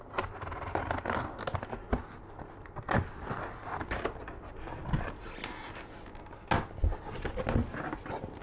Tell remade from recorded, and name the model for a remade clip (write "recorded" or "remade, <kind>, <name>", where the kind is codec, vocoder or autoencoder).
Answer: recorded